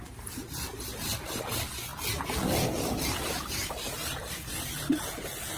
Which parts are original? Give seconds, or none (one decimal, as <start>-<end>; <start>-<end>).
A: 0.0-5.6